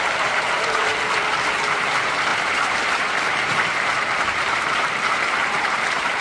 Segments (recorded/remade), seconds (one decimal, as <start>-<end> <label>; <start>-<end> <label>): 0.0-0.9 remade; 0.9-1.7 recorded; 1.7-6.2 remade